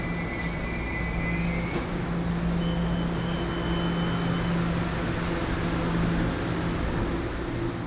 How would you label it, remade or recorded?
recorded